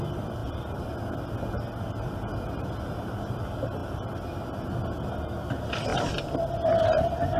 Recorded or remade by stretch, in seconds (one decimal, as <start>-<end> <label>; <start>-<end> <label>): 0.0-7.4 recorded